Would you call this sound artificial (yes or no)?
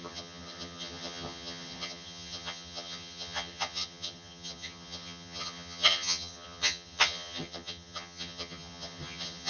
yes